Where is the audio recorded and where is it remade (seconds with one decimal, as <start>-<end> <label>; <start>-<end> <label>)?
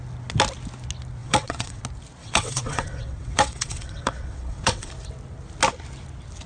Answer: 0.0-1.2 recorded; 1.2-1.8 remade; 1.8-2.2 recorded; 2.2-4.9 remade; 4.9-6.5 recorded